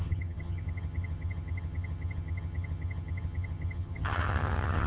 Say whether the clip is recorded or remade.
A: remade